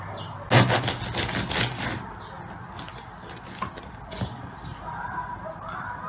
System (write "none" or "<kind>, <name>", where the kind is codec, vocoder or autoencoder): none